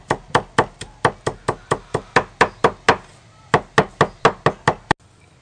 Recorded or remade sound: recorded